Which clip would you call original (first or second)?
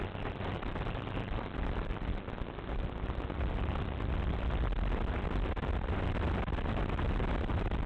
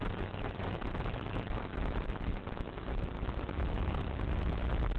first